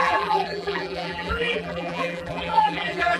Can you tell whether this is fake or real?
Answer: fake